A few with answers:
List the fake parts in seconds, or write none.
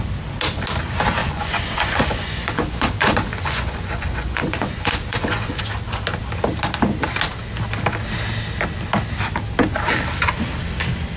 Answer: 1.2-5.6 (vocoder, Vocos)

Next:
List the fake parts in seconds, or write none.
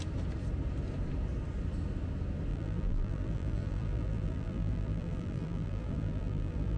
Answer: 2.5-6.8 (vocoder, BigVGAN v2)